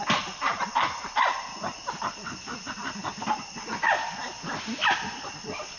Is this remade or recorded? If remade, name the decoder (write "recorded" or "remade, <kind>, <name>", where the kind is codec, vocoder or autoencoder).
recorded